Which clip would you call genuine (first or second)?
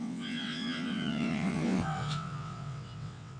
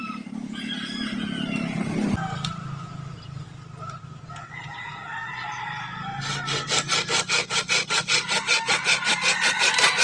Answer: second